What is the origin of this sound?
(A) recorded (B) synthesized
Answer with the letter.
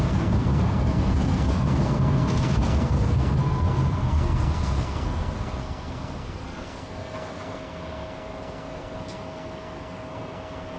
B